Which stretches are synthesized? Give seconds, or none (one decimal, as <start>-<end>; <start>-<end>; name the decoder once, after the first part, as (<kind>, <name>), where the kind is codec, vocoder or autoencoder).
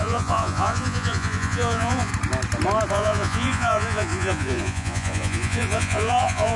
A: 0.0-2.1 (vocoder, Vocos); 2.9-6.6